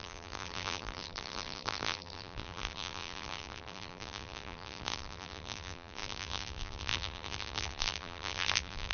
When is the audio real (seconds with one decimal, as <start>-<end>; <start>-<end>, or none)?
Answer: none